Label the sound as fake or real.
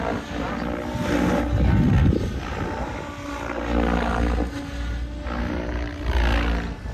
real